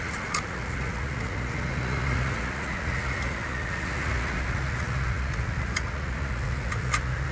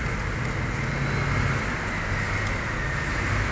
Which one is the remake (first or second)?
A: first